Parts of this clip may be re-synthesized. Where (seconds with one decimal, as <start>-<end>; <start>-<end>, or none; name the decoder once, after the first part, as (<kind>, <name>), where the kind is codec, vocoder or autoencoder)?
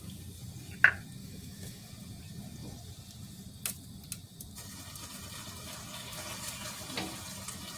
1.2-1.9 (autoencoder, DAC-VAE)